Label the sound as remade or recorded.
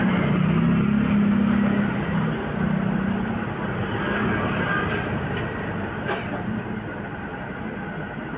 recorded